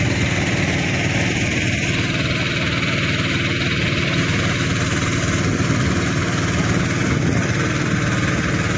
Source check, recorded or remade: recorded